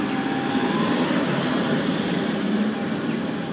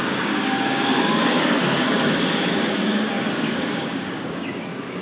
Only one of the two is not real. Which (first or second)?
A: second